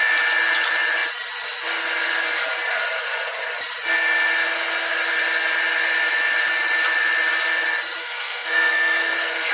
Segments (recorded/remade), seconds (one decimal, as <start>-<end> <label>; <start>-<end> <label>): 0.0-8.0 recorded; 8.0-9.5 remade

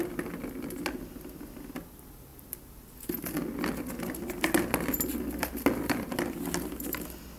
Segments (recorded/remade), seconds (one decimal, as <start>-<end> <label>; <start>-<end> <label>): 0.0-7.4 recorded

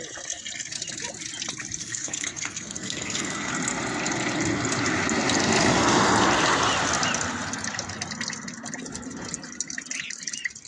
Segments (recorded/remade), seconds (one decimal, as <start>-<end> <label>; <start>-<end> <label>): 0.0-1.8 recorded; 1.8-3.5 remade; 3.5-10.7 recorded

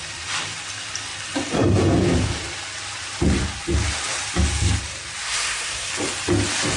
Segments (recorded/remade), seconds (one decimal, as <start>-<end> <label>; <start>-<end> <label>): 0.0-5.2 recorded; 5.2-5.9 remade; 5.9-6.8 recorded

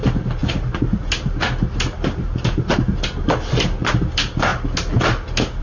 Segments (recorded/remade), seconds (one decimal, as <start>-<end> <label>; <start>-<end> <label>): 0.0-5.6 recorded